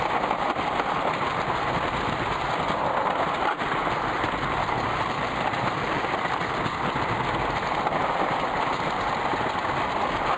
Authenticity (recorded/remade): remade